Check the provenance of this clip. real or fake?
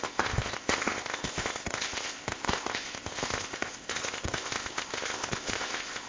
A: fake